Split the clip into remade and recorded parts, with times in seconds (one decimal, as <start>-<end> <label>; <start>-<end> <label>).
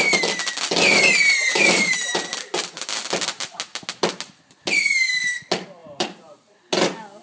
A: 0.0-1.2 recorded; 1.2-2.3 remade; 2.3-5.8 recorded; 5.8-6.6 remade; 6.6-7.2 recorded